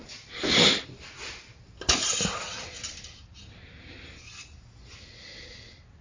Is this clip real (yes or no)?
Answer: yes